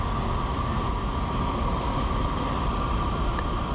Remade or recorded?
recorded